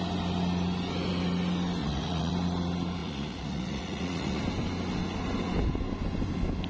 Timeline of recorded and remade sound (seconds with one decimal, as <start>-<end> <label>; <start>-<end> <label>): 0.0-1.8 recorded; 1.8-2.3 remade; 2.3-3.0 recorded; 3.0-4.4 remade; 4.4-6.7 recorded